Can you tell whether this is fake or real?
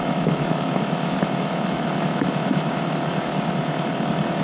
fake